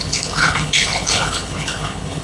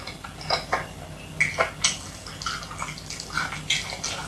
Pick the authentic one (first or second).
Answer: second